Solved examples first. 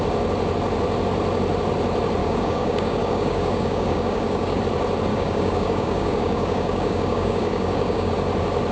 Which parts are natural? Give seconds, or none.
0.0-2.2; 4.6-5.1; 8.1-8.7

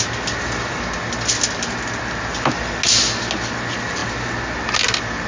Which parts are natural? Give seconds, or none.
0.0-5.3

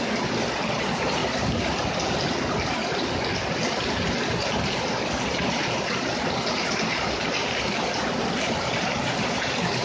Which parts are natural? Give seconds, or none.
1.2-4.8

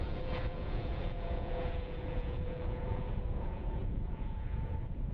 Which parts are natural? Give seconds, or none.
none

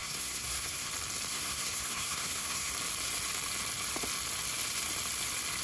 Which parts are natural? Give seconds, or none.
0.9-1.3; 2.7-5.6

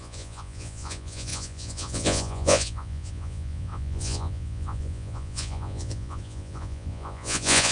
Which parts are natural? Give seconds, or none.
none